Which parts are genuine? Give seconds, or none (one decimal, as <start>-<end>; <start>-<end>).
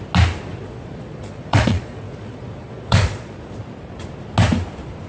0.0-0.6; 3.6-5.1